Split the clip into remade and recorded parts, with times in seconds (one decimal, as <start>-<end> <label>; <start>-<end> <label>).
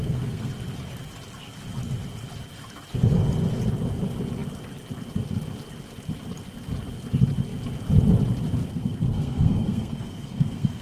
0.0-0.5 remade; 0.5-8.6 recorded; 8.6-10.8 remade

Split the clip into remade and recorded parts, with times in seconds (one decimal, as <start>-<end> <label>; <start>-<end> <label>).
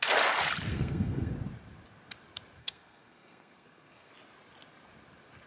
0.0-0.7 recorded; 0.7-1.3 remade; 1.3-2.6 recorded; 2.6-4.1 remade; 4.1-5.5 recorded